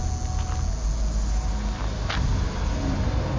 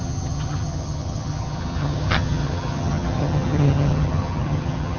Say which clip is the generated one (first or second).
second